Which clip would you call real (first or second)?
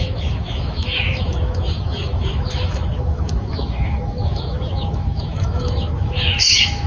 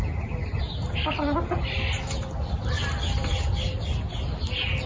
second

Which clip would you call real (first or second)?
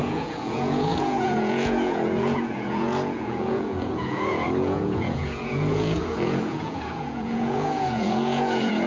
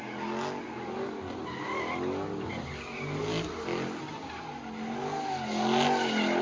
second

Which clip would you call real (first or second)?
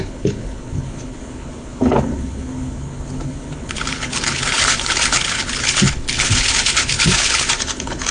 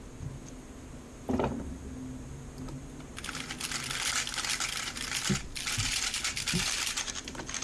second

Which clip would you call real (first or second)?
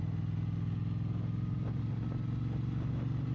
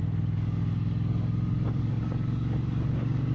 first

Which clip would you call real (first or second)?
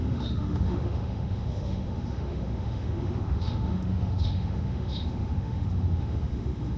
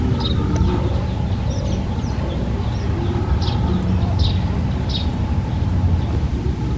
second